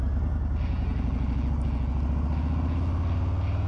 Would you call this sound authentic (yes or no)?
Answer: yes